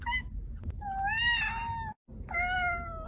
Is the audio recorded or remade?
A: recorded